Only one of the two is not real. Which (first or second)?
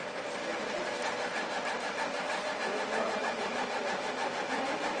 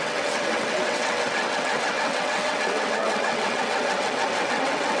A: second